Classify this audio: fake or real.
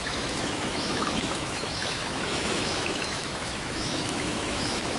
fake